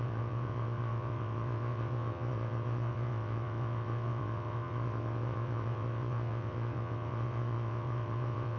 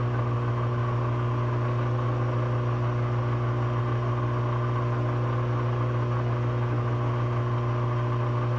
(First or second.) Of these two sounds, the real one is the second